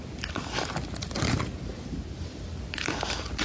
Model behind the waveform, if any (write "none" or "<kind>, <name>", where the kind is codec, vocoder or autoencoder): none